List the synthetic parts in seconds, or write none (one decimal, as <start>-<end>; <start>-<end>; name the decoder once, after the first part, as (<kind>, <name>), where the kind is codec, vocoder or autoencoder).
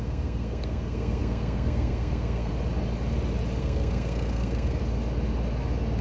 0.0-2.5 (codec, SNAC); 3.6-4.8